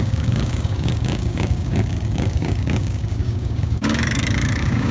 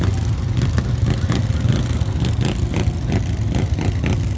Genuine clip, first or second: second